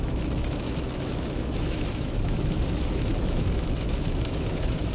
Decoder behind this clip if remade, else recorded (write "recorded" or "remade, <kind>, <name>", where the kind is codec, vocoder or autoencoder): remade, autoencoder, DAC-VAE